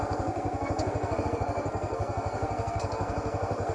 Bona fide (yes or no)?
no